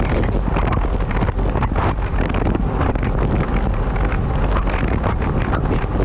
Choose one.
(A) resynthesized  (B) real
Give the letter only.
B